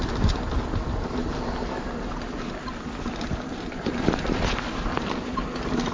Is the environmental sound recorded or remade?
recorded